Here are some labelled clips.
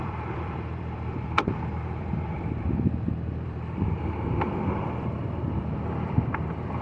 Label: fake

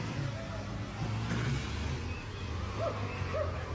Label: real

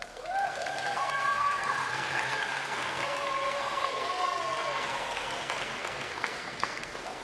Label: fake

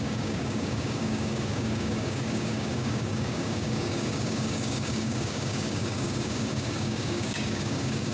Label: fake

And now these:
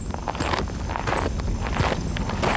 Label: real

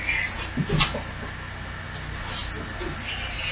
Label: real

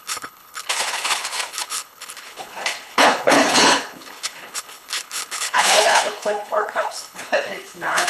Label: fake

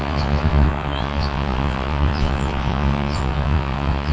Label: fake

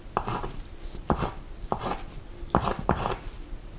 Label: real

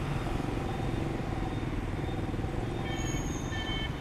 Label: real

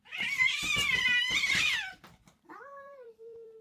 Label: fake